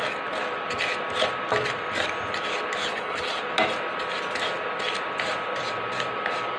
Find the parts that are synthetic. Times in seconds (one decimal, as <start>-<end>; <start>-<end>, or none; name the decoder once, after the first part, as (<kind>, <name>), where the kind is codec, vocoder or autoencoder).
2.8-3.4 (codec, HILCodec)